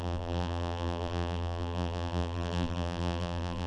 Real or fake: fake